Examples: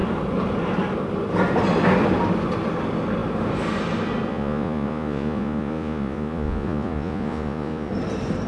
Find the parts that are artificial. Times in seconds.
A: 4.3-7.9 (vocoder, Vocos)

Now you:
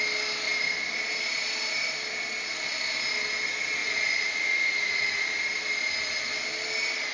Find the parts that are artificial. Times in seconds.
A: 3.8-5.3 (vocoder, Vocos)

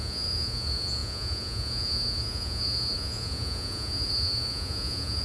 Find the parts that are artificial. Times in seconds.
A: 0.0-5.2 (vocoder, Vocos)

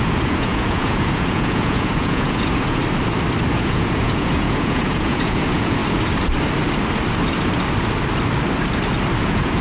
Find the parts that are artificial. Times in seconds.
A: 0.0-2.8 (vocoder, Vocos); 3.5-5.8; 9.2-9.6

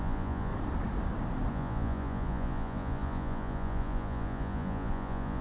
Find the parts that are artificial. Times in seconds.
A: 0.0-0.5 (vocoder, Vocos); 1.5-5.4

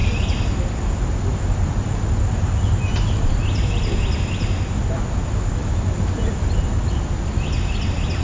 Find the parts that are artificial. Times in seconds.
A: none